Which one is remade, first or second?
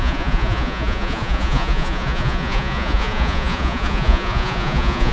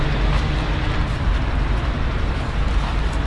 first